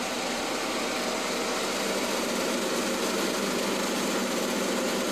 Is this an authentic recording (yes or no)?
yes